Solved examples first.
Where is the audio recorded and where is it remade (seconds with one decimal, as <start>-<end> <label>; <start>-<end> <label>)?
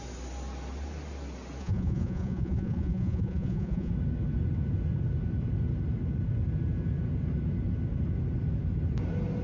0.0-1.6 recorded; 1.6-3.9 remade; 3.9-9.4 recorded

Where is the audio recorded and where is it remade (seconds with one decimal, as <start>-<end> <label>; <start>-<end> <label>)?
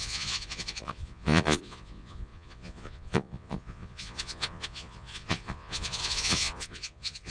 0.0-7.3 remade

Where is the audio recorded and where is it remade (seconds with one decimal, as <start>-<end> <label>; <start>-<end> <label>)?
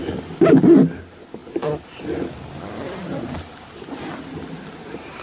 0.0-5.2 recorded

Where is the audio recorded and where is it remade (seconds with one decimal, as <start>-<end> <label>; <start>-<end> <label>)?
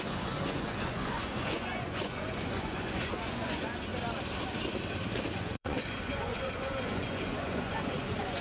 0.0-3.9 remade; 3.9-5.3 recorded; 5.3-8.4 remade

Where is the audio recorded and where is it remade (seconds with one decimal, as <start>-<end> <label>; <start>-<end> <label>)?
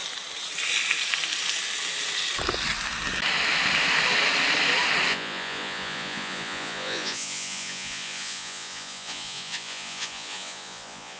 0.0-5.1 recorded; 5.1-11.2 remade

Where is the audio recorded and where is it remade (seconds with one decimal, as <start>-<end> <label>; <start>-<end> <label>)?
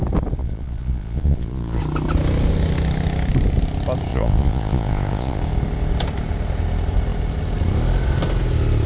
0.0-0.4 recorded; 0.4-1.8 remade; 1.8-4.1 recorded; 4.1-5.4 remade; 5.4-8.9 recorded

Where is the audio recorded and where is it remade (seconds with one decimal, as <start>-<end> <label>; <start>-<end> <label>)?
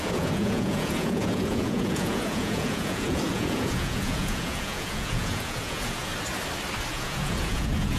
0.0-6.1 remade; 6.1-6.9 recorded; 6.9-8.0 remade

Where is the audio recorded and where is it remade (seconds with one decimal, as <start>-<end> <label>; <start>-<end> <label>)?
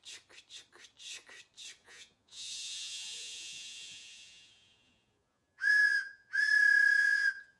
0.0-1.8 recorded; 1.8-6.4 remade; 6.4-7.0 recorded; 7.0-7.6 remade